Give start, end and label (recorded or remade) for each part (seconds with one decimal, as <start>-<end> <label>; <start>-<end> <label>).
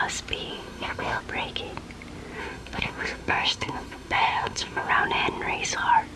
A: 0.0-0.5 recorded; 0.5-1.2 remade; 1.2-2.4 recorded; 2.4-4.9 remade; 4.9-6.2 recorded